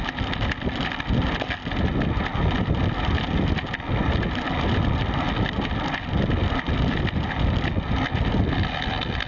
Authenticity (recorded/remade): recorded